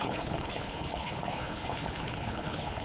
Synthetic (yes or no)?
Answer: yes